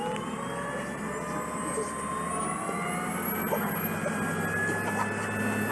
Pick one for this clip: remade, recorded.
recorded